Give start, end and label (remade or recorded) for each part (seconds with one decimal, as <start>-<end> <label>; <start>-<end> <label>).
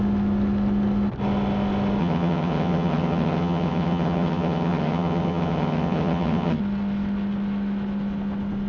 0.0-2.0 recorded; 2.0-6.6 remade; 6.6-8.7 recorded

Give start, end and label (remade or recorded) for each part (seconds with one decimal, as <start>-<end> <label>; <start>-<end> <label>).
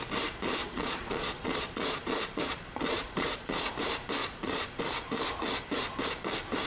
0.0-0.6 recorded; 0.6-3.7 remade; 3.7-4.2 recorded; 4.2-4.8 remade; 4.8-6.7 recorded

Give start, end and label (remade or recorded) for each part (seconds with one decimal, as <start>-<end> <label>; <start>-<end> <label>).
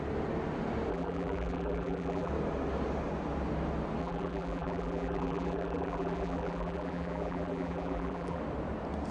0.0-0.9 recorded; 0.9-2.3 remade; 2.3-4.0 recorded; 4.0-8.4 remade; 8.4-9.1 recorded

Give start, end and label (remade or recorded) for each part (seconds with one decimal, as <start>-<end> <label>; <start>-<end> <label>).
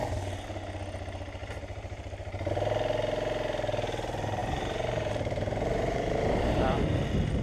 0.0-1.4 recorded; 1.4-2.5 remade; 2.5-4.4 recorded; 4.4-6.8 remade; 6.8-7.4 recorded